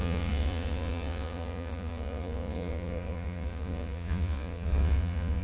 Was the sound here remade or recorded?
remade